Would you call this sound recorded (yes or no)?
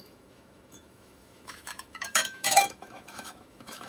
no